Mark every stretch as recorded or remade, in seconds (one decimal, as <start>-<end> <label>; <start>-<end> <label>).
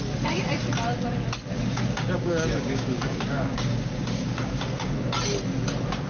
0.0-1.7 recorded; 1.7-5.1 remade; 5.1-6.1 recorded